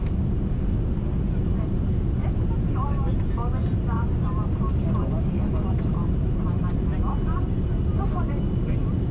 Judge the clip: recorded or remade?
recorded